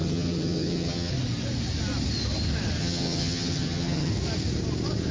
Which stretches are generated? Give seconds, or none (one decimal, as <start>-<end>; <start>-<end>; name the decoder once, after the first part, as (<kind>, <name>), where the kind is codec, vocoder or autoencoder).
0.0-1.1 (vocoder, HiFi-GAN); 2.8-4.1

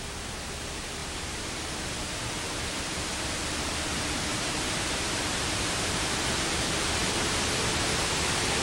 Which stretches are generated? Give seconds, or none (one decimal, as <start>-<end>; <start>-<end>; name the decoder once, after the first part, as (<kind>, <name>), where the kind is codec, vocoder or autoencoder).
1.0-1.6 (vocoder, BigVGAN v2); 3.9-6.2

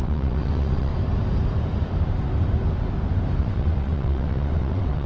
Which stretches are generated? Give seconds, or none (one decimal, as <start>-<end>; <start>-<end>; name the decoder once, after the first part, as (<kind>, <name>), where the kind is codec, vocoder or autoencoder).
0.0-0.9 (vocoder, WaveNeXt); 3.4-5.1

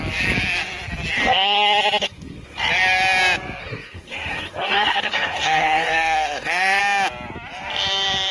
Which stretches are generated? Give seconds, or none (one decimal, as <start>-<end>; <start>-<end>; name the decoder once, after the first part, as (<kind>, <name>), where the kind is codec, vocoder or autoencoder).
2.0-2.6 (codec, SNAC); 3.6-6.8

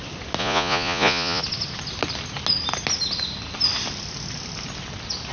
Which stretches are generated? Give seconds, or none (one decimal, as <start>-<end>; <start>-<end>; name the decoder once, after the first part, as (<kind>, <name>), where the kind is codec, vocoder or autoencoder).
0.4-1.4 (vocoder, Vocos)

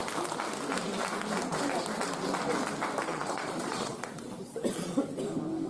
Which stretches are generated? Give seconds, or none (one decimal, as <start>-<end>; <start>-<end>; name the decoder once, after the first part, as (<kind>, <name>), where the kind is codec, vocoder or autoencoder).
3.1-5.0 (vocoder, Vocos)